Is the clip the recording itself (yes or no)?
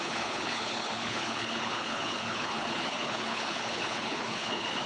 no